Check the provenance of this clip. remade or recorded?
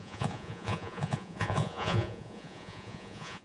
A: remade